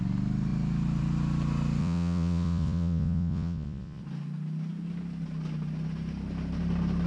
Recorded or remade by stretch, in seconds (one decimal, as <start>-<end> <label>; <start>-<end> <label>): 0.0-1.8 recorded; 1.8-4.0 remade; 4.0-7.1 recorded